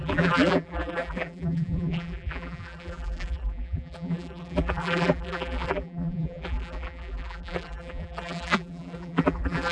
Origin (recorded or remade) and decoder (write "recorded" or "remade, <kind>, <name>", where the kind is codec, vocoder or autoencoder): remade, vocoder, BigVGAN v2